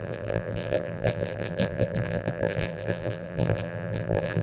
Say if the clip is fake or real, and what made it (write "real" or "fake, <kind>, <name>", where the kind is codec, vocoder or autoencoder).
fake, vocoder, BigVGAN v2